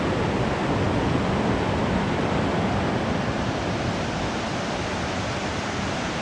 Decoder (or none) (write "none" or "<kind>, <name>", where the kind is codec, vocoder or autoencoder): none